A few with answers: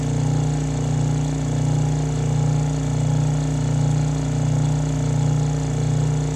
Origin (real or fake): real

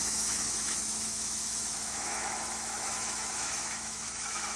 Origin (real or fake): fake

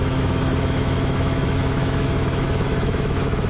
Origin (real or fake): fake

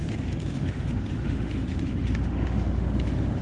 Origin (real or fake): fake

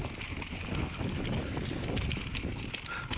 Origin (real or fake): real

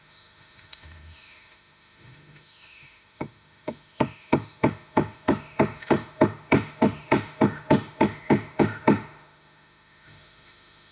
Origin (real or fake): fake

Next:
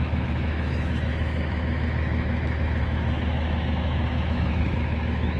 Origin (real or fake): fake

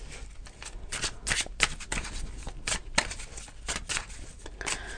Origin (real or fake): real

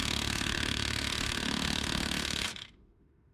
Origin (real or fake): fake